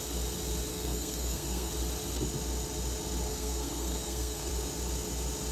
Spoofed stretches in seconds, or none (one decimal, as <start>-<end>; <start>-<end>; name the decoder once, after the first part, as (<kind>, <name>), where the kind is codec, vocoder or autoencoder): 0.7-1.7 (codec, SNAC); 3.3-4.5